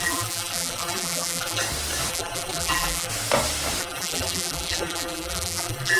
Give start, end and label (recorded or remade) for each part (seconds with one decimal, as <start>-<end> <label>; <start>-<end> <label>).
0.0-1.6 remade; 1.6-2.1 recorded; 2.1-3.1 remade; 3.1-3.8 recorded; 3.8-6.0 remade